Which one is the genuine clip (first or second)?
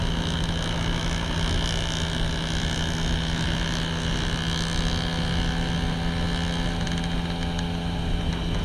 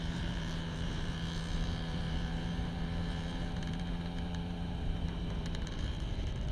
first